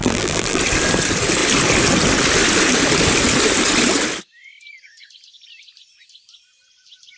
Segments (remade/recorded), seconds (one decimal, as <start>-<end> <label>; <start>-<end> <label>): 0.0-0.6 remade; 0.6-7.2 recorded